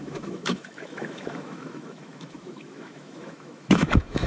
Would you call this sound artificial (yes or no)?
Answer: yes